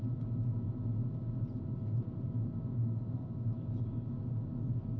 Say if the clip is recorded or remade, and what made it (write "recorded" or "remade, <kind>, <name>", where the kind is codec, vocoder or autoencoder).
recorded